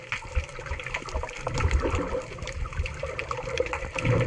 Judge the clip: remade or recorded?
recorded